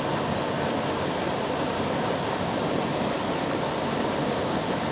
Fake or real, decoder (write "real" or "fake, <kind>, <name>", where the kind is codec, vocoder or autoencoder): real